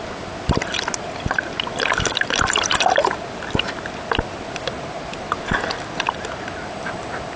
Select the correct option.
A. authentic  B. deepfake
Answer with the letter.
A